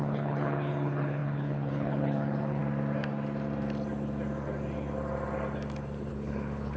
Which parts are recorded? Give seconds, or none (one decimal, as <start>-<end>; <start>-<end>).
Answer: 2.6-6.1